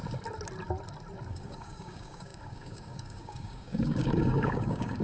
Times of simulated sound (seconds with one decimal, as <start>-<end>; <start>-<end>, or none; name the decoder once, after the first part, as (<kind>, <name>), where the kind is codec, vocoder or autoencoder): 1.3-5.0 (codec, DAC)